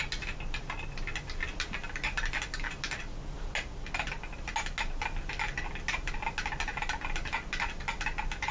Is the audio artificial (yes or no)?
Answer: no